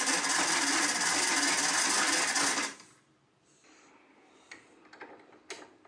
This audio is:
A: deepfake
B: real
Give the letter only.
B